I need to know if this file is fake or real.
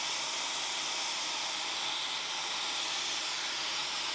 real